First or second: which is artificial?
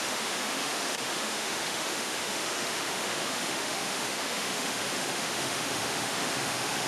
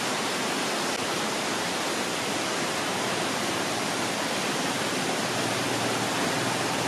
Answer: first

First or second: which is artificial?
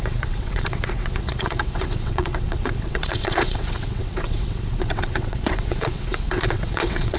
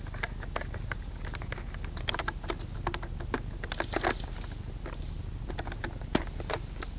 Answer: first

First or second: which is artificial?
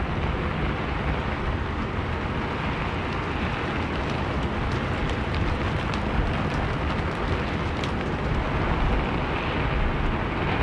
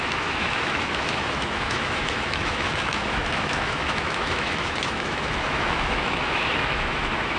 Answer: second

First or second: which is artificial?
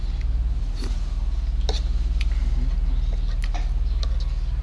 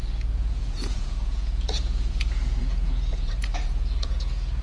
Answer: second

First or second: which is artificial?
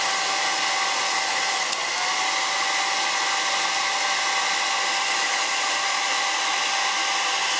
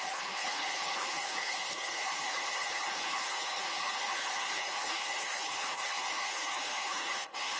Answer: second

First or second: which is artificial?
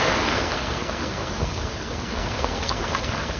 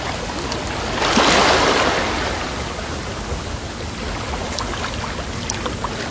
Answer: first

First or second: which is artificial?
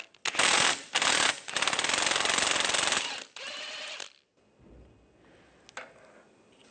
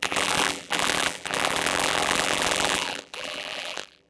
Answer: second